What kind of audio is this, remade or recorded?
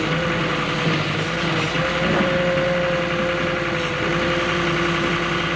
recorded